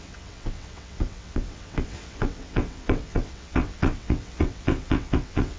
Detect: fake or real fake